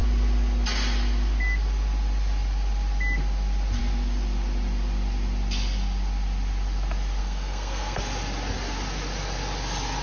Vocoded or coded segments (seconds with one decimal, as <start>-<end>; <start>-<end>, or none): 7.2-8.0